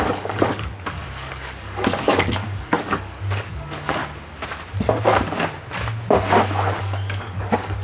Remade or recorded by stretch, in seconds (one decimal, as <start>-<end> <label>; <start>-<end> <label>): 0.0-4.0 remade; 4.0-6.8 recorded; 6.8-7.8 remade